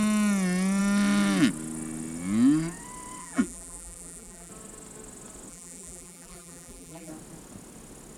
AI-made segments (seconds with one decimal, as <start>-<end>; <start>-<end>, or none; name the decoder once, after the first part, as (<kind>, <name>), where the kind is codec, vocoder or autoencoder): 3.2-4.5 (vocoder, BigVGAN v2); 5.5-7.1